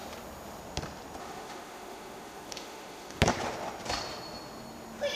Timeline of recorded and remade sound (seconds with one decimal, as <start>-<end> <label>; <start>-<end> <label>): 0.0-1.2 recorded; 1.2-3.2 remade; 3.2-5.1 recorded